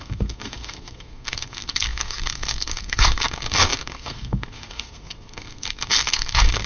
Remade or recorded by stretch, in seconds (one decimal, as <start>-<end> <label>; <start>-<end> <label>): 0.0-6.7 remade